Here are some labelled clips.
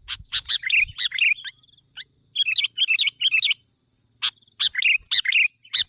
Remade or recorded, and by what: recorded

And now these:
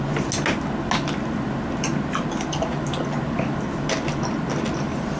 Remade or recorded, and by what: recorded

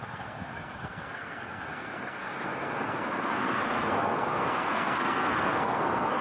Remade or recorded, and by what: remade, codec, SNAC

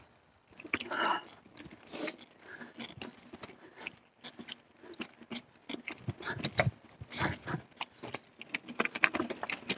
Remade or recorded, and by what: recorded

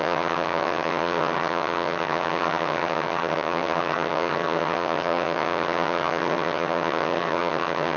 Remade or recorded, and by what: remade, vocoder, HiFi-GAN